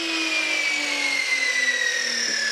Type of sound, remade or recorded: recorded